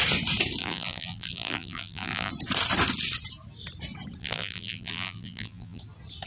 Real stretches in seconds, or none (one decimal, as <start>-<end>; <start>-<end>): 0.0-0.6; 2.3-4.2; 5.8-6.3

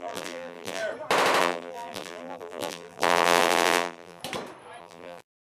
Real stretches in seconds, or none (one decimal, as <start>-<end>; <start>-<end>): 0.8-1.4; 4.2-4.8